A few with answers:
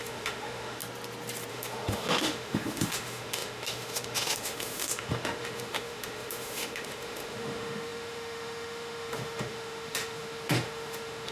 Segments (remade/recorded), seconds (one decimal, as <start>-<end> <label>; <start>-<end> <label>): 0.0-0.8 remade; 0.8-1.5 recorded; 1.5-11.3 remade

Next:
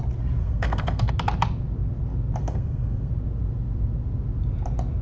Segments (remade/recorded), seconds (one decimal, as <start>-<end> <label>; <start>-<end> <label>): 0.0-0.4 recorded; 0.4-1.1 remade; 1.1-2.4 recorded; 2.4-3.1 remade; 3.1-5.0 recorded

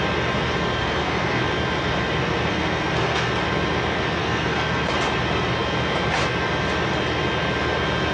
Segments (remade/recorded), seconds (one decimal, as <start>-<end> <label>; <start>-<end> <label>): 0.0-0.8 recorded; 0.8-1.4 remade; 1.4-2.5 recorded; 2.5-3.3 remade; 3.3-4.2 recorded; 4.2-4.9 remade; 4.9-8.1 recorded